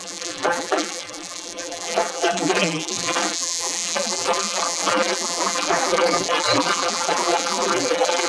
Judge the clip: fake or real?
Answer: fake